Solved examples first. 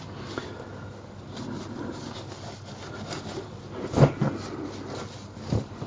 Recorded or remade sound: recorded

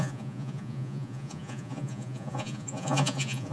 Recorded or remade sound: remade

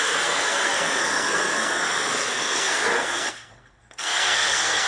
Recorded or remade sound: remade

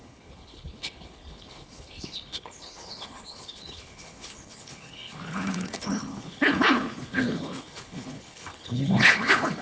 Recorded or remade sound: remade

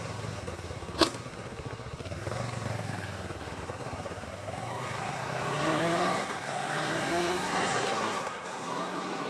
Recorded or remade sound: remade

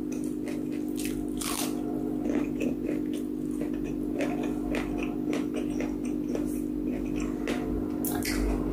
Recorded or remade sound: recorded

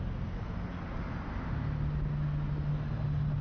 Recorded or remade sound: recorded